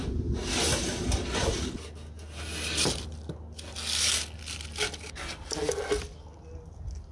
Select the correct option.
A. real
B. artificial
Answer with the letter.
A